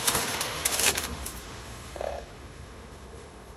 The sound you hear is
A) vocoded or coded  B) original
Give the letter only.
A